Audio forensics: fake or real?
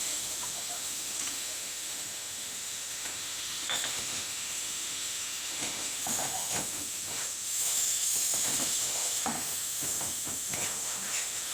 fake